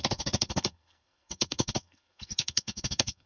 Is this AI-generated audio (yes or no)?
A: yes